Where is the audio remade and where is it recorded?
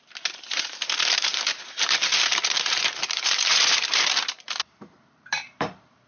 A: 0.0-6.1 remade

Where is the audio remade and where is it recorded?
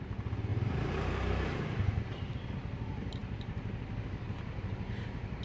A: 0.0-0.5 recorded; 0.5-2.0 remade; 2.0-5.4 recorded